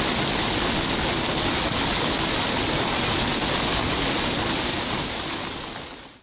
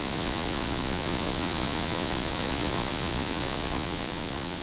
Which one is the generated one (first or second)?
second